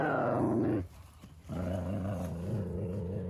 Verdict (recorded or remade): recorded